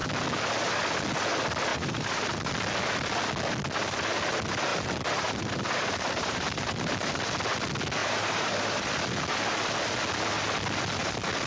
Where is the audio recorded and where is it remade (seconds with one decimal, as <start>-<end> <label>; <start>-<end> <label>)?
0.0-1.7 recorded; 1.7-2.5 remade; 2.5-4.7 recorded; 4.7-7.2 remade; 7.2-8.0 recorded; 8.0-8.9 remade; 8.9-11.5 recorded

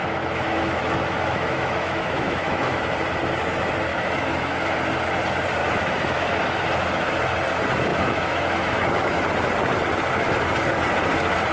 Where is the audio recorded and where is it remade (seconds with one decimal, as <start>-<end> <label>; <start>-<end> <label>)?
0.0-2.8 remade; 2.8-3.9 recorded; 3.9-4.7 remade; 4.7-5.6 recorded; 5.6-6.4 remade; 6.4-7.9 recorded; 7.9-9.2 remade; 9.2-11.5 recorded

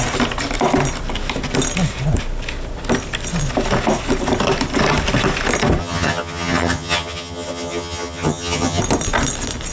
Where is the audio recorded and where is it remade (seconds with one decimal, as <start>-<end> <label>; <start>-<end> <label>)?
0.0-5.8 recorded; 5.8-8.8 remade; 8.8-9.7 recorded

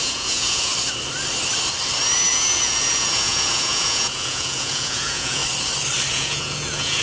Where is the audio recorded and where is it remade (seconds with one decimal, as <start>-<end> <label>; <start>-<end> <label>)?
0.0-0.7 remade; 0.7-2.3 recorded; 2.3-5.4 remade; 5.4-6.1 recorded; 6.1-7.0 remade

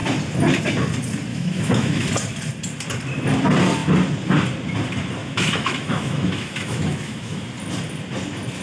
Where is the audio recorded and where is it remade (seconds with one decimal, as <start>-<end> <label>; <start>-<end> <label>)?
0.0-1.3 recorded; 1.3-2.1 remade; 2.1-5.2 recorded; 5.2-7.4 remade; 7.4-8.6 recorded